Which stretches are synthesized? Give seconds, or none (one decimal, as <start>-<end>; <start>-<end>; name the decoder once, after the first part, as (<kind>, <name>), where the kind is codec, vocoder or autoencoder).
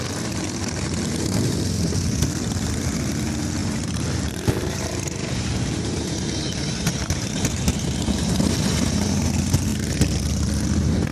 3.6-8.5 (vocoder, BigVGAN v2); 9.7-10.2